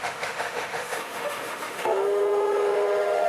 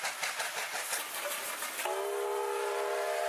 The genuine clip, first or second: second